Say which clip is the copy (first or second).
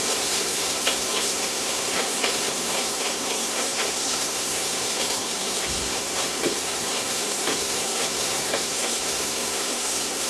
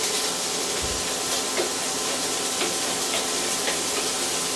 first